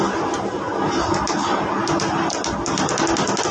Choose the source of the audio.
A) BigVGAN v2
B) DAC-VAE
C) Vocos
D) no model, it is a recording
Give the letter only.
D